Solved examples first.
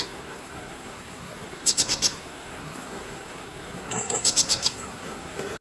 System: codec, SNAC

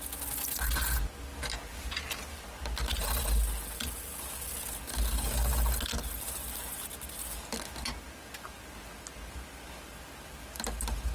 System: none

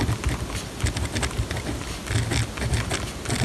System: none